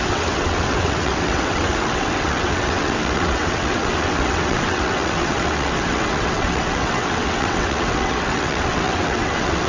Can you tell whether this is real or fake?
fake